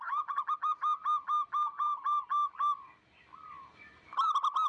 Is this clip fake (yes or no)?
no